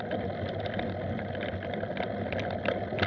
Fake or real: real